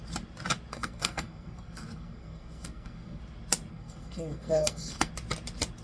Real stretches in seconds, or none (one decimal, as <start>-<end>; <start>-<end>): 0.0-0.7; 3.2-3.7; 5.1-5.8